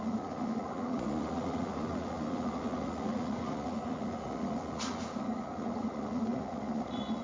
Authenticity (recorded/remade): remade